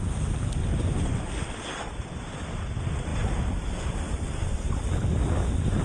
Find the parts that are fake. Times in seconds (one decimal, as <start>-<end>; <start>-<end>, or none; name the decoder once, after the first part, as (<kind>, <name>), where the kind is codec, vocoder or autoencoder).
0.6-1.4 (vocoder, Vocos)